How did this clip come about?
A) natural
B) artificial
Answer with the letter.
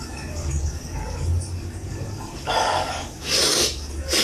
B